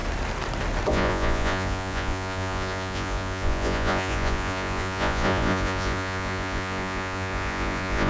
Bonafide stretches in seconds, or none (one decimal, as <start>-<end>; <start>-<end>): 0.0-0.9